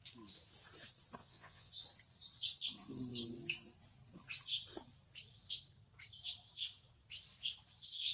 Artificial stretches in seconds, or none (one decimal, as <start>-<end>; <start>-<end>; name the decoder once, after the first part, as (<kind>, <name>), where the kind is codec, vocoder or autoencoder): 1.2-1.7 (vocoder, Vocos)